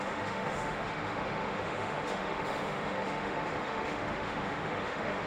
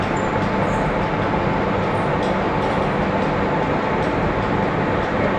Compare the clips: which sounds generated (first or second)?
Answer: first